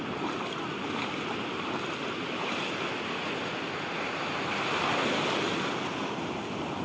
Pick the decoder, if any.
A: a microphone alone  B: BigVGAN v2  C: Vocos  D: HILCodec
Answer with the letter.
A